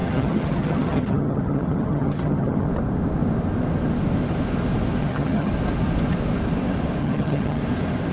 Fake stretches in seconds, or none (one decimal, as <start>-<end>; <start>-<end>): 0.0-2.7; 5.0-5.5; 7.0-7.6